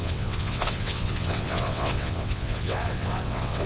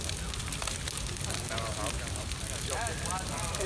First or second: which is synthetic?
first